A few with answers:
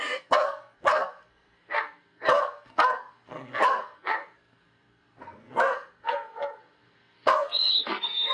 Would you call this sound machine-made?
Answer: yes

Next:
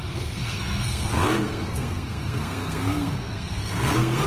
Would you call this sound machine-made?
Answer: yes